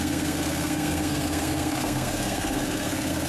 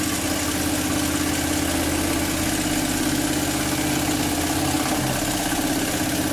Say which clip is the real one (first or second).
second